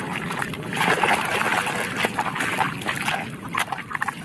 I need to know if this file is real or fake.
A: real